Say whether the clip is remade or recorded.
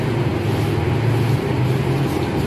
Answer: recorded